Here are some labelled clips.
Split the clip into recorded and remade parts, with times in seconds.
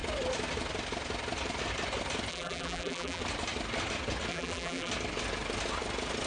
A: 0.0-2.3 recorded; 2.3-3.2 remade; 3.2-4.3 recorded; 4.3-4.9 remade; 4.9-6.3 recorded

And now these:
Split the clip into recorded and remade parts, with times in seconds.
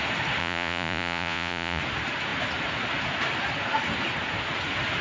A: 0.0-0.4 recorded; 0.4-1.8 remade; 1.8-5.0 recorded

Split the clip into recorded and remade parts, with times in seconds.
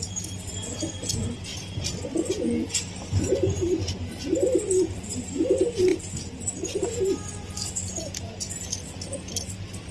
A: 0.0-9.9 recorded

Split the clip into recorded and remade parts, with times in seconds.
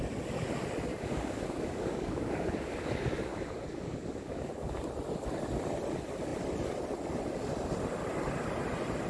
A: 0.0-0.9 recorded; 0.9-4.8 remade; 4.8-9.1 recorded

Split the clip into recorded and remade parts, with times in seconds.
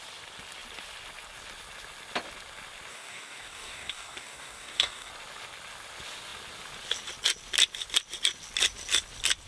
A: 0.0-2.9 recorded; 2.9-5.1 remade; 5.1-9.5 recorded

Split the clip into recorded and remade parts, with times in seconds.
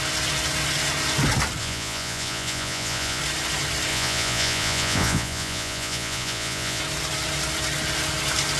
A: 0.0-1.6 recorded; 1.6-3.2 remade; 3.2-3.9 recorded; 3.9-6.8 remade; 6.8-8.6 recorded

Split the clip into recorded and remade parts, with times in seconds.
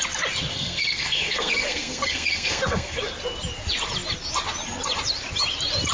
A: 0.0-0.5 recorded; 0.5-3.0 remade; 3.0-5.9 recorded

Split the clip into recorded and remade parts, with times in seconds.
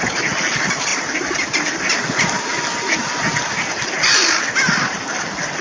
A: 0.0-5.6 recorded